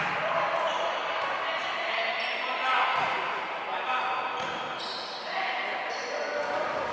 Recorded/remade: recorded